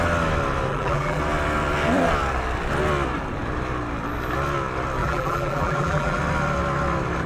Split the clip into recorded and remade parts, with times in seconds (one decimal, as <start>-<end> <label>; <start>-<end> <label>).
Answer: 0.0-0.7 recorded; 0.7-1.2 remade; 1.2-5.0 recorded; 5.0-6.2 remade; 6.2-7.3 recorded